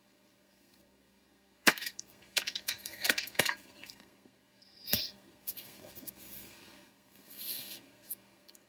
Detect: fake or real fake